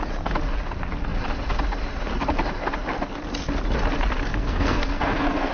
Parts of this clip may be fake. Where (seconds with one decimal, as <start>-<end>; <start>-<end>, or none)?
4.3-5.5